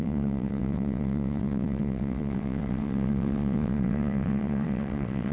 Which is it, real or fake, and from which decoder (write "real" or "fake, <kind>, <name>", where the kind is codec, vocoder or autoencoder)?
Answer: fake, vocoder, WaveNeXt